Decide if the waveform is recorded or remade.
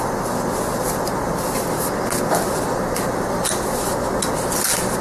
recorded